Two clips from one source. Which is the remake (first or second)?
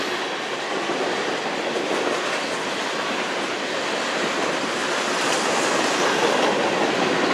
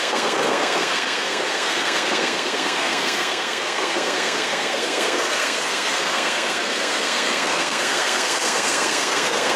second